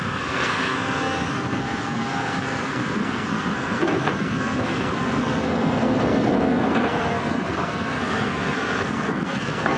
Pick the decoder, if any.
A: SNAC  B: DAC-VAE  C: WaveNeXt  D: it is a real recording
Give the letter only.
A